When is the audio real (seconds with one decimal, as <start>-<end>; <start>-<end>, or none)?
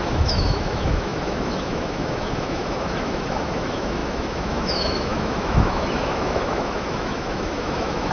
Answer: none